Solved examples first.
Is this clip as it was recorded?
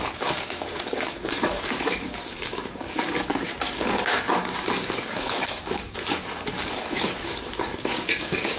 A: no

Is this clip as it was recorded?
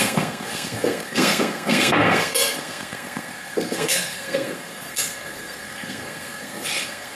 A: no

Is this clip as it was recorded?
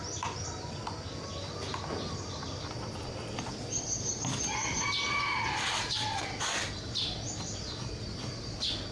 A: yes